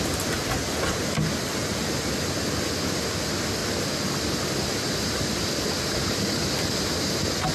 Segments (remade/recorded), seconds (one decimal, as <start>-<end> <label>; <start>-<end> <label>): 0.0-1.6 recorded; 1.6-2.1 remade; 2.1-7.5 recorded